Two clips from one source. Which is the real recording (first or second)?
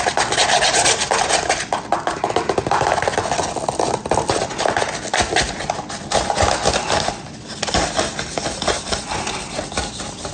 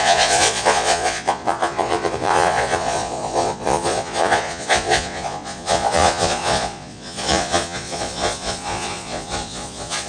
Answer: first